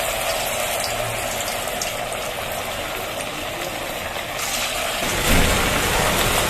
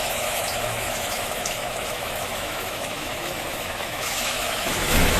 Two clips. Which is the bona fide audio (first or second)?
first